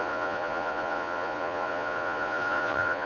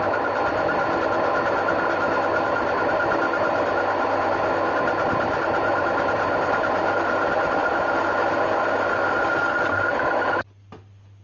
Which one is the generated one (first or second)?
first